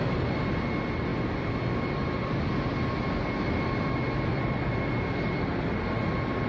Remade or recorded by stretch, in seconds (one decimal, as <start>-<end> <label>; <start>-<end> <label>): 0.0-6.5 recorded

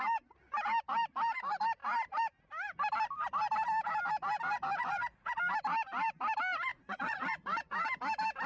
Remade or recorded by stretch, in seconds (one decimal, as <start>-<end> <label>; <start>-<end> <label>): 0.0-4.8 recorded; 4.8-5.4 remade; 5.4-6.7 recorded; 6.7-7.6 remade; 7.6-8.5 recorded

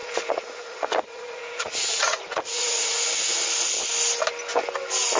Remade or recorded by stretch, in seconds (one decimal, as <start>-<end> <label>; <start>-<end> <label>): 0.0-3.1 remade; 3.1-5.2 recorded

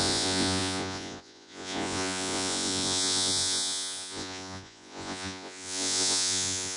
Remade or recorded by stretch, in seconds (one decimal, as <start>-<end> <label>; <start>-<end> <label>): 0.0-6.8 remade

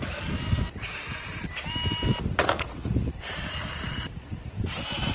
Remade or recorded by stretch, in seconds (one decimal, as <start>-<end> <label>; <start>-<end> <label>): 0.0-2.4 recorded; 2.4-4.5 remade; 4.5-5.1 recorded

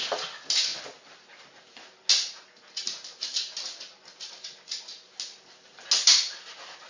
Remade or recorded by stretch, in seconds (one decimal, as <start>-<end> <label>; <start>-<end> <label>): 0.0-6.9 recorded

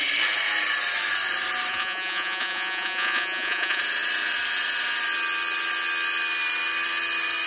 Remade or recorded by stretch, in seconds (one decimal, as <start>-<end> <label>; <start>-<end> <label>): 0.0-1.7 recorded; 1.7-3.8 remade; 3.8-7.5 recorded